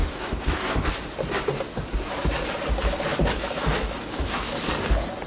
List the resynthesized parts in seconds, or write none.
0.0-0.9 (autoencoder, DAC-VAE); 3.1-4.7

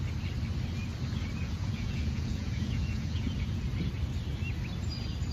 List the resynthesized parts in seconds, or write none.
1.4-3.7 (vocoder, Vocos)

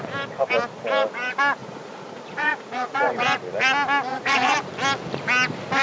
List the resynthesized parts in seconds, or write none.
1.6-3.2 (vocoder, Vocos); 4.1-4.7